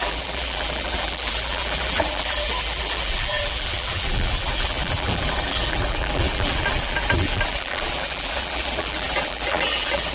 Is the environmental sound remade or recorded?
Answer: remade